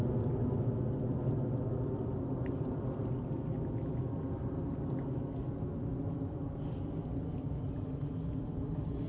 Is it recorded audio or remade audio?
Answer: recorded